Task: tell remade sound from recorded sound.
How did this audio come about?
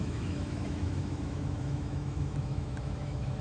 remade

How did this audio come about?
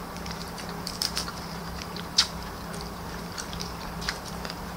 remade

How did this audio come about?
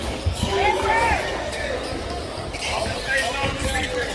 remade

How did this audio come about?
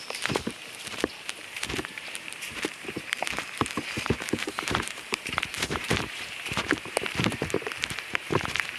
remade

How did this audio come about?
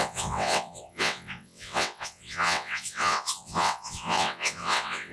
remade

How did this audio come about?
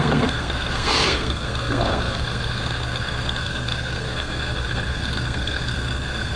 remade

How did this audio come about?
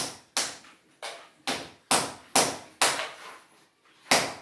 recorded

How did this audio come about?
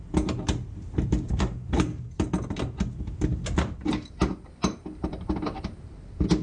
remade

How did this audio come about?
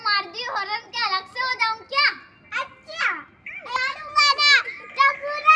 recorded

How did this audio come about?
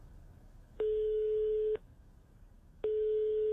remade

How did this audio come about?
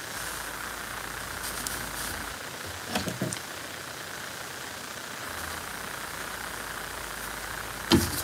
recorded